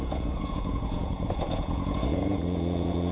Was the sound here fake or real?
fake